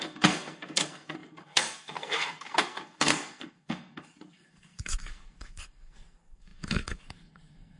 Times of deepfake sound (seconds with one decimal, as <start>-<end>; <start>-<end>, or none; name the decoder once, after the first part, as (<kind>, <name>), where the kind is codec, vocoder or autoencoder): 0.0-7.8 (codec, SNAC)